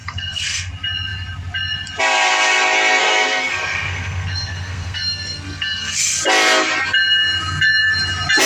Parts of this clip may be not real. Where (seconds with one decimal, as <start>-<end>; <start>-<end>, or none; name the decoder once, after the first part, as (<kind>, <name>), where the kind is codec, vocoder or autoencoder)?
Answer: 0.0-0.7 (codec, SNAC); 3.0-6.2